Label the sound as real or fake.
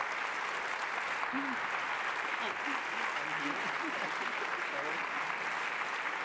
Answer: real